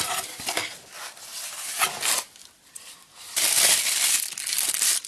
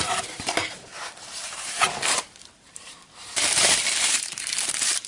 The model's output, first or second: second